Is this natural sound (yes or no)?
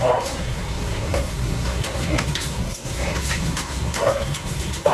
no